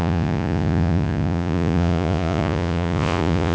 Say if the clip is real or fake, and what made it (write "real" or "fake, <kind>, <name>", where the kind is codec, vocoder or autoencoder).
fake, vocoder, Vocos